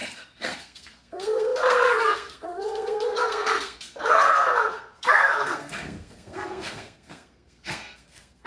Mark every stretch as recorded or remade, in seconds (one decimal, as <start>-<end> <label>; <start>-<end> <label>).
0.0-8.5 remade